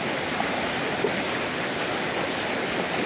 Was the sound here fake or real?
real